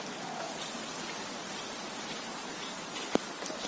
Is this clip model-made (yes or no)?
no